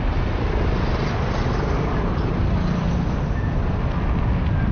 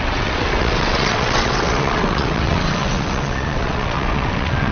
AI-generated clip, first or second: second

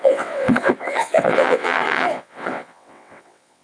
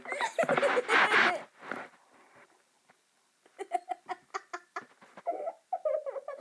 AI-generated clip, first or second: first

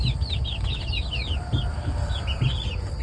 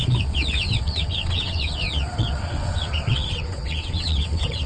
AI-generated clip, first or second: second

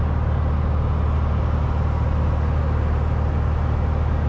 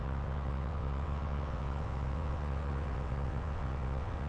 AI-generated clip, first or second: second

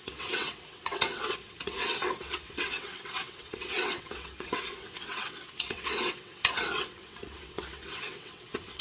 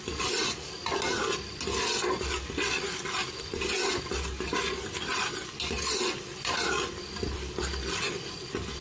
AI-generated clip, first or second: first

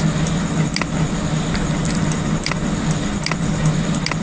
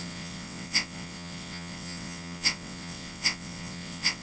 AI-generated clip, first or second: second